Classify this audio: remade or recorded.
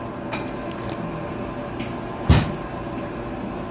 recorded